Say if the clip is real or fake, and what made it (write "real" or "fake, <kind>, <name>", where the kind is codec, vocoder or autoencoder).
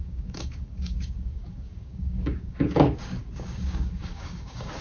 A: fake, codec, DAC